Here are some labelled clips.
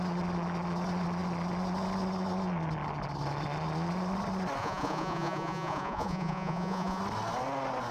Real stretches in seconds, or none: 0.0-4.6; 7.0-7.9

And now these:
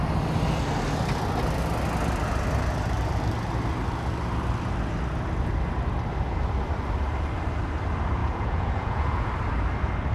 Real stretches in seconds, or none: 0.0-8.2; 9.3-10.1

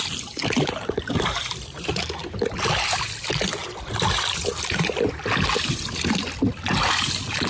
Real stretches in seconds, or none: 0.0-2.2; 2.9-3.6; 5.1-7.5